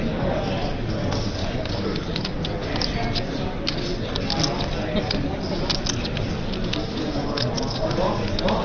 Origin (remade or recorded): recorded